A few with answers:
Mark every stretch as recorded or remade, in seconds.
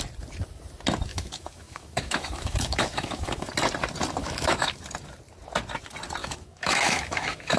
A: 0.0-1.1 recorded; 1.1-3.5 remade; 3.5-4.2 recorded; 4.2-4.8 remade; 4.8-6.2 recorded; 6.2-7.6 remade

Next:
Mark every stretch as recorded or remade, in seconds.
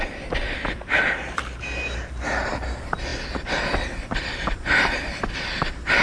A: 0.0-6.0 recorded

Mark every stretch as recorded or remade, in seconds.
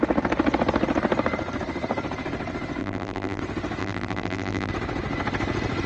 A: 0.0-2.8 recorded; 2.8-3.4 remade; 3.4-3.8 recorded; 3.8-4.7 remade; 4.7-5.9 recorded